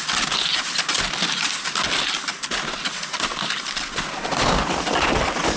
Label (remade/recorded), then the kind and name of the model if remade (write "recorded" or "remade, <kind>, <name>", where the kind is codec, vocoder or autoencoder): recorded